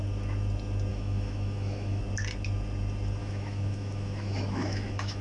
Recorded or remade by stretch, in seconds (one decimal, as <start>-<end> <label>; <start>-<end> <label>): 0.0-0.9 recorded; 0.9-2.0 remade; 2.0-3.2 recorded; 3.2-5.2 remade